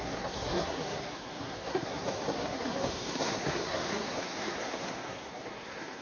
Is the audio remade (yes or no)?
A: yes